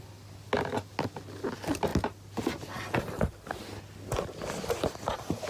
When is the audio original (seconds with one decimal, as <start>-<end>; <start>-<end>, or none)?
0.0-5.5